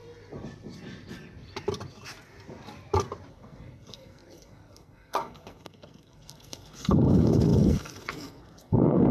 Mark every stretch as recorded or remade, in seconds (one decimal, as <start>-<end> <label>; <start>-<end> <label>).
0.0-3.3 recorded; 3.3-9.1 remade